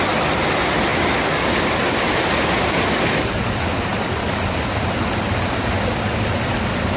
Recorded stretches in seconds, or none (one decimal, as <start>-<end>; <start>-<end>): 0.0-7.0